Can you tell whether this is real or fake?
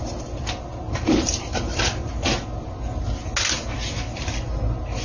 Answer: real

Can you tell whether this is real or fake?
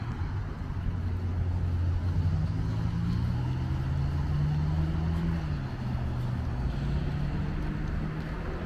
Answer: real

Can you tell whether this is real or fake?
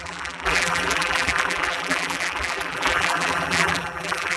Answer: fake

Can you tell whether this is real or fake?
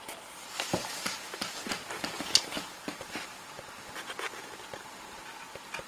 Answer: real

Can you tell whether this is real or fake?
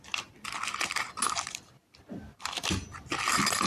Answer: real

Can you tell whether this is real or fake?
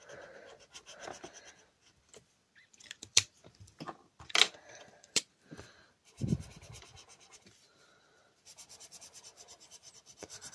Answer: fake